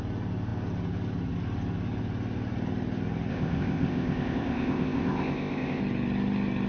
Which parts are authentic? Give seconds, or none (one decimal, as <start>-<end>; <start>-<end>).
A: 0.0-3.3; 5.8-6.7